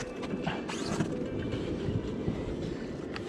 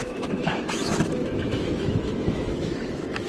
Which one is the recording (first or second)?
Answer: first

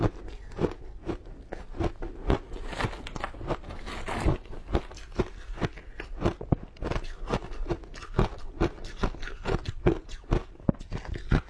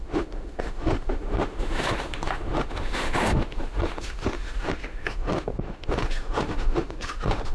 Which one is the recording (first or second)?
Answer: first